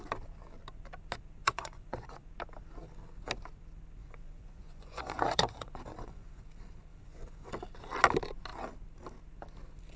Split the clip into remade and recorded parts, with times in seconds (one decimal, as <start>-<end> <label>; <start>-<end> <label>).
0.0-1.4 recorded; 1.4-2.2 remade; 2.2-4.0 recorded; 4.0-6.5 remade; 6.5-6.9 recorded; 6.9-7.5 remade; 7.5-10.0 recorded